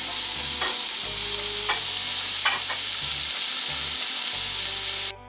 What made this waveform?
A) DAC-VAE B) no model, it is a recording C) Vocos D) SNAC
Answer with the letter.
B